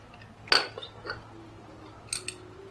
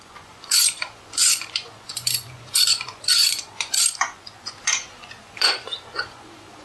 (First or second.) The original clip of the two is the first